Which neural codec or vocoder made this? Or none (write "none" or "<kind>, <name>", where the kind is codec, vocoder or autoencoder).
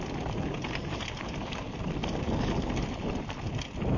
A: none